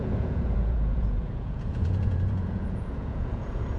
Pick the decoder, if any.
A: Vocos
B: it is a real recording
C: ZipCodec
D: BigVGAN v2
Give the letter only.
A